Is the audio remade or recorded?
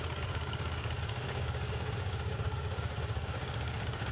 remade